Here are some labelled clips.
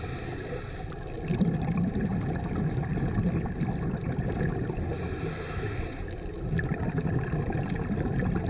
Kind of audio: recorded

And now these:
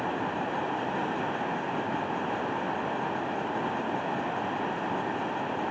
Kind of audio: recorded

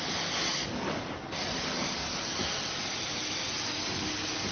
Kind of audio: recorded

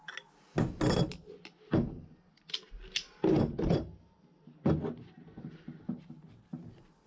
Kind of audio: recorded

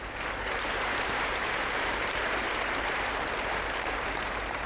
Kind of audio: remade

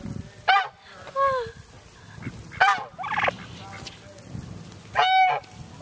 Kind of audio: recorded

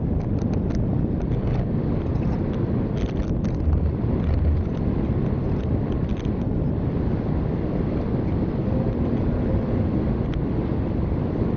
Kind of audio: recorded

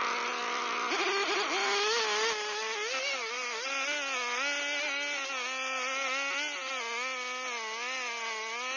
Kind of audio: recorded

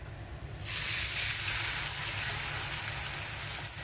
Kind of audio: recorded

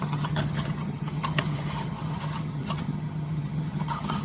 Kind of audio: remade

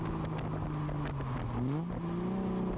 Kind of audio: recorded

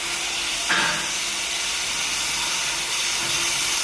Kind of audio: recorded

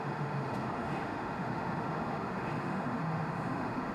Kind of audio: remade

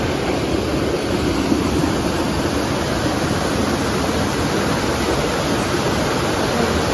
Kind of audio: recorded